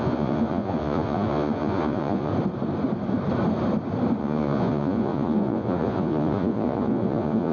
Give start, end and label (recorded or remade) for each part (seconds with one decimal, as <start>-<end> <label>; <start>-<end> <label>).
0.0-2.3 remade; 2.3-4.2 recorded; 4.2-7.5 remade